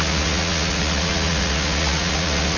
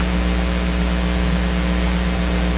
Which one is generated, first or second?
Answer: first